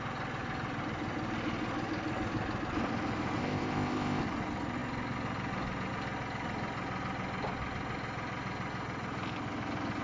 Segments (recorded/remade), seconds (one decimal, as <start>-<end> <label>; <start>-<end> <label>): 0.0-3.4 recorded; 3.4-4.2 remade; 4.2-10.0 recorded